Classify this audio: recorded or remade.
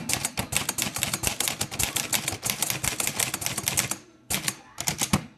recorded